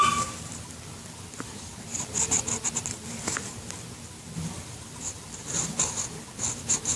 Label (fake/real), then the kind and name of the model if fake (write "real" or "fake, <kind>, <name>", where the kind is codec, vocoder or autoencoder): real